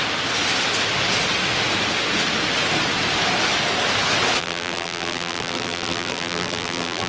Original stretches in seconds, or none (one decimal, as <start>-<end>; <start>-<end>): 0.0-4.4